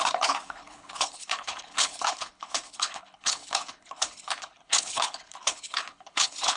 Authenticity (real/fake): fake